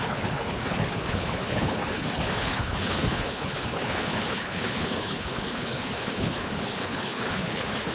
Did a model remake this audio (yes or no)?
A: yes